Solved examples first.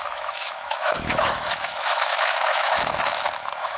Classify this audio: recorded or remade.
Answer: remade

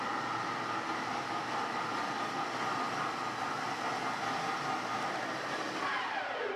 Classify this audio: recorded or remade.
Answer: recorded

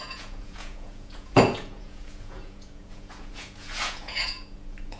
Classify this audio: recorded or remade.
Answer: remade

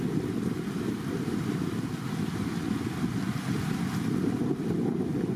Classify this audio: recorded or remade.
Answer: recorded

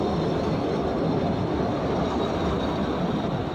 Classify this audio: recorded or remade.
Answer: recorded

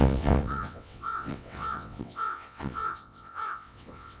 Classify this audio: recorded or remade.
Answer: remade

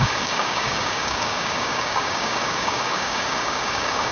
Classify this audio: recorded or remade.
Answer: remade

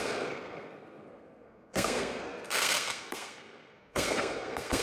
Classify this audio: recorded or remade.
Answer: remade